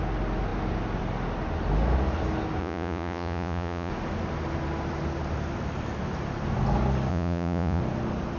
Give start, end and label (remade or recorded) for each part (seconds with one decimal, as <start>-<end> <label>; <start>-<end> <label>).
0.0-2.6 recorded; 2.6-3.9 remade; 3.9-7.1 recorded; 7.1-7.8 remade; 7.8-8.4 recorded